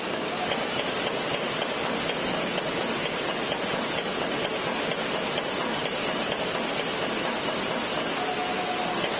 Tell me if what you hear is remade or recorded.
recorded